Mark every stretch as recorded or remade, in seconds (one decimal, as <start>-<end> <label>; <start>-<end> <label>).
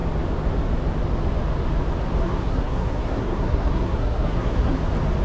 0.0-2.2 recorded; 2.2-4.7 remade; 4.7-5.2 recorded